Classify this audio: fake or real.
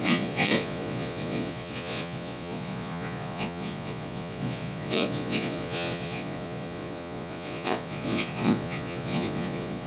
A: fake